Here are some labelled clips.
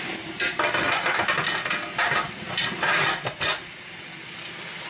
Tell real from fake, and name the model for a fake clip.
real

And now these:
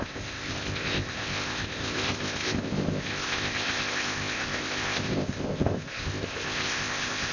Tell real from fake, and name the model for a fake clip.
fake, codec, ZipCodec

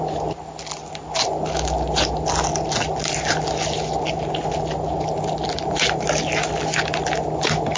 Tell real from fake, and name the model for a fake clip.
real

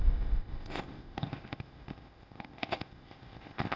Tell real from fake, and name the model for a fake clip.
fake, codec, ZipCodec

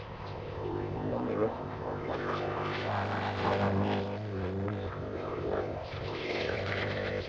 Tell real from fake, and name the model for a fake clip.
fake, codec, ZipCodec